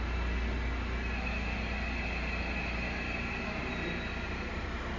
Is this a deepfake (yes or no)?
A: no